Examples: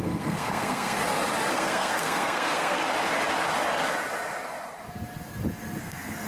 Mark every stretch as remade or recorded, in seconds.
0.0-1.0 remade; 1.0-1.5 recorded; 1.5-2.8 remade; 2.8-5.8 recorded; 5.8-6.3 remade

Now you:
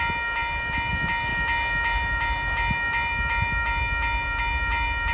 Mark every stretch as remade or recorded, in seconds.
0.0-5.1 recorded

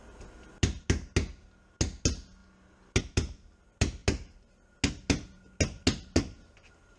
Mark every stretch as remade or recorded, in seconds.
0.0-7.0 recorded

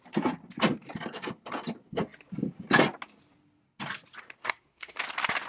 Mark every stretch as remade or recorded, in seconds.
0.0-4.4 recorded; 4.4-5.0 remade; 5.0-5.5 recorded

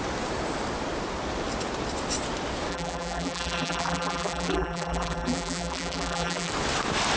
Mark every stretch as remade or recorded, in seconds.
0.0-2.7 recorded; 2.7-6.5 remade; 6.5-7.2 recorded

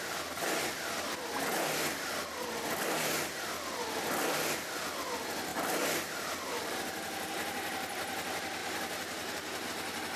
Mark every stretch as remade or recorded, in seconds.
0.0-5.5 recorded; 5.5-6.8 remade; 6.8-8.6 recorded; 8.6-9.7 remade; 9.7-10.2 recorded

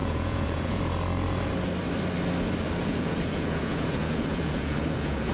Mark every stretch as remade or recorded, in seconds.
0.0-0.8 remade; 0.8-2.8 recorded; 2.8-5.3 remade